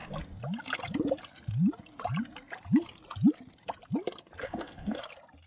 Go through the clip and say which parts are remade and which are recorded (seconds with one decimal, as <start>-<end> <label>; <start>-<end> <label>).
0.0-4.4 recorded; 4.4-5.0 remade; 5.0-5.5 recorded